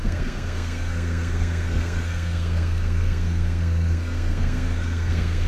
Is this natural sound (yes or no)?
no